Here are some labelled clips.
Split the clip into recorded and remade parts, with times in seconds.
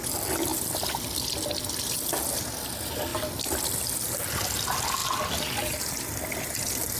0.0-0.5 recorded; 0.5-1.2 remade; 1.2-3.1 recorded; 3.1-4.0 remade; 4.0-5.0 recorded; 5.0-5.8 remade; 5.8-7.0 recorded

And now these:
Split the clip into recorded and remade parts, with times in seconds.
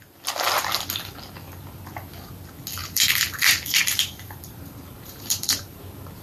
0.0-2.8 recorded; 2.8-6.2 remade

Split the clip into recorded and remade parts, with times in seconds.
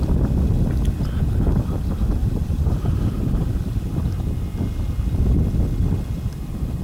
0.0-2.2 recorded; 2.2-3.9 remade; 3.9-6.8 recorded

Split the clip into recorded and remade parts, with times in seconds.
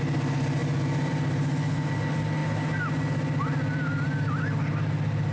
0.0-5.3 recorded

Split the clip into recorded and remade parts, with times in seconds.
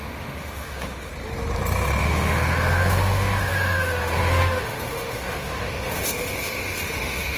0.0-1.1 remade; 1.1-2.0 recorded; 2.0-7.4 remade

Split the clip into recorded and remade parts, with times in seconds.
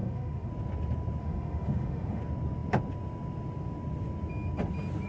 0.0-0.5 remade; 0.5-1.2 recorded; 1.2-2.2 remade; 2.2-5.1 recorded